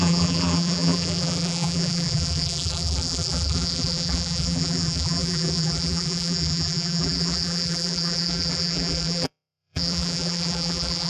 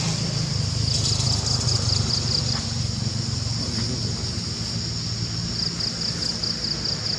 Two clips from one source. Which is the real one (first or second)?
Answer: second